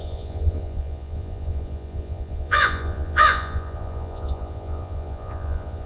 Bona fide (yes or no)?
no